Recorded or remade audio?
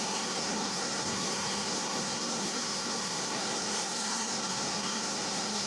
remade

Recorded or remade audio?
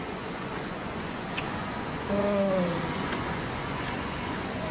remade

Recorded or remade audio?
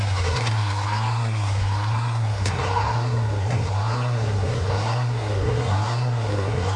remade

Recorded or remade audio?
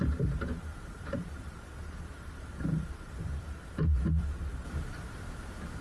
remade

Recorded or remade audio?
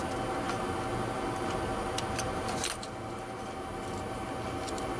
recorded